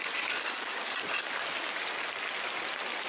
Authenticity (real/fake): real